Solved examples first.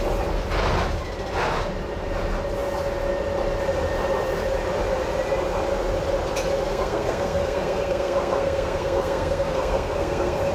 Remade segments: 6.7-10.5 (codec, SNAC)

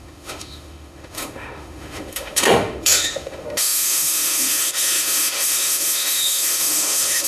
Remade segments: 0.0-7.3 (autoencoder, DAC-VAE)

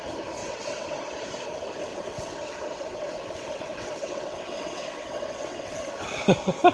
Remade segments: 0.4-1.0 (vocoder, WaveNeXt); 1.9-5.9

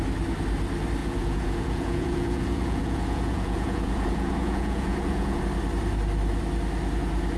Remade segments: 1.0-5.4 (vocoder, Vocos)

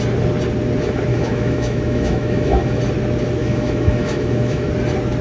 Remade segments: 1.1-2.8 (autoencoder, DAC-VAE); 3.4-4.7